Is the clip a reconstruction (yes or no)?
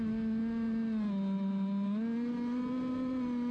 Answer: no